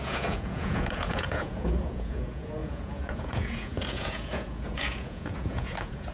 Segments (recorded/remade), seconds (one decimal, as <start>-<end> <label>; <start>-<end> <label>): 0.0-6.1 remade